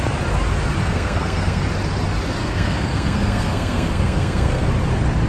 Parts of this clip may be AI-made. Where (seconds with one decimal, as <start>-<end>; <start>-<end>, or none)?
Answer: 0.8-1.6; 2.4-4.7